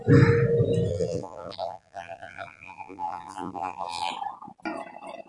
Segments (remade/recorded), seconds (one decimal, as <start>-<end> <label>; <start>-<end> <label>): 0.0-0.9 recorded; 0.9-4.1 remade; 4.1-5.3 recorded